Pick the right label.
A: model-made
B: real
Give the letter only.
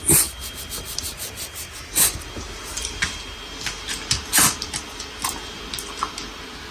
B